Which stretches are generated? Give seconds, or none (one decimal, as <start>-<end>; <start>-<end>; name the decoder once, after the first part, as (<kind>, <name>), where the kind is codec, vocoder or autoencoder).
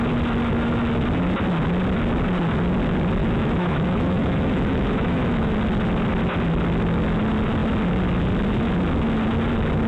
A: 3.2-5.5 (autoencoder, DAC-VAE)